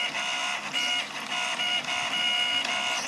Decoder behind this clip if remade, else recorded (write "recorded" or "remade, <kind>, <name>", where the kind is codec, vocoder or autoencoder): recorded